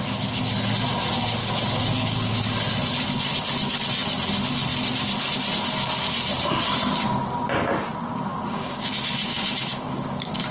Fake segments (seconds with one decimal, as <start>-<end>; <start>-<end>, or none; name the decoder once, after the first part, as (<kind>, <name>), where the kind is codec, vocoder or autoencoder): 1.4-2.4 (codec, DAC); 8.3-8.9; 9.3-10.5